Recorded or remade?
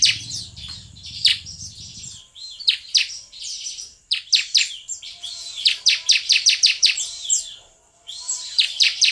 remade